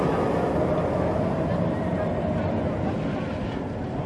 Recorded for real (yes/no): yes